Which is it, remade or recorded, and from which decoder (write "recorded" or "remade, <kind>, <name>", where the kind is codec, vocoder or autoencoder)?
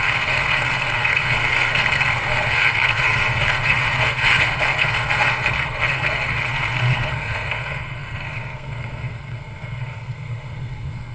remade, codec, SNAC